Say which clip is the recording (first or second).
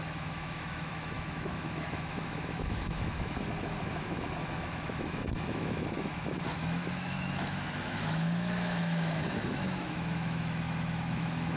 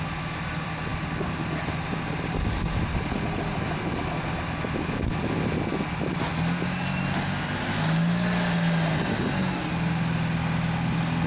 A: second